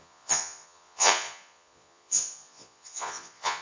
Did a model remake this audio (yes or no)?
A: yes